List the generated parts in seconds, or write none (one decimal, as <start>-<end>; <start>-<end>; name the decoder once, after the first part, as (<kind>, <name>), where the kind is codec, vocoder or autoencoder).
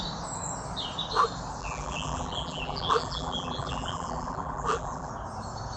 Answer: 1.6-5.1 (vocoder, BigVGAN v2)